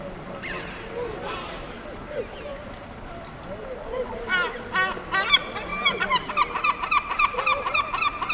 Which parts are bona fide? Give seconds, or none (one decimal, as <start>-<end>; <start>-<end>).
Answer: 0.0-2.5; 4.6-8.3